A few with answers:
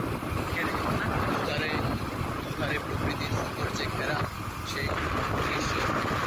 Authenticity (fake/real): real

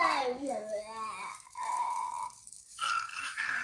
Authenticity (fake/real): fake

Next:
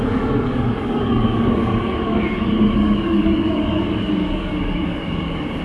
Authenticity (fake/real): fake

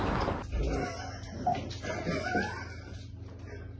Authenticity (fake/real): real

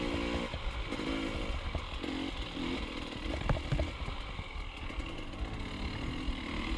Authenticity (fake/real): real